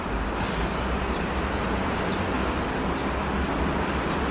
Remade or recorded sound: recorded